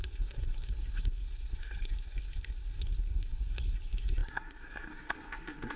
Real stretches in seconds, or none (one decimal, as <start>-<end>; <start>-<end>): none